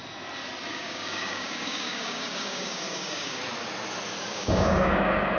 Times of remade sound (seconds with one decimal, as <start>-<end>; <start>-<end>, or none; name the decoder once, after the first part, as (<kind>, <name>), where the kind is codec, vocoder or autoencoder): 0.7-3.4 (codec, DAC); 4.3-5.4